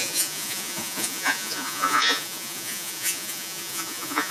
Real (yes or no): no